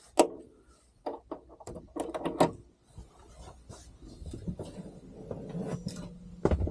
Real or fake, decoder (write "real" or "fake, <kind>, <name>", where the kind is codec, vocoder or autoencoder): real